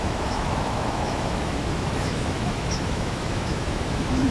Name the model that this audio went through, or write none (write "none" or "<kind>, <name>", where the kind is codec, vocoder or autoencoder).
autoencoder, DAC-VAE